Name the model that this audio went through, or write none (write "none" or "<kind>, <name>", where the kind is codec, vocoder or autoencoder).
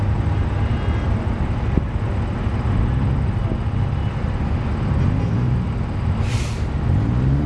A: none